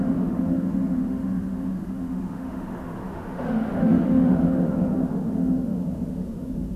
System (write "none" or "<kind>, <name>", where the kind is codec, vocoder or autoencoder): autoencoder, DAC-VAE